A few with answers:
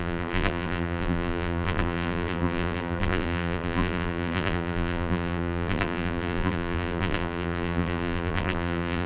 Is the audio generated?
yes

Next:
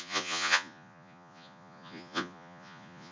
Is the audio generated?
yes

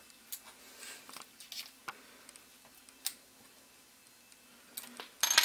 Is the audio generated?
no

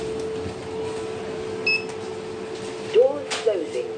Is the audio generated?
no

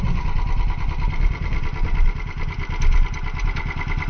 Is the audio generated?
no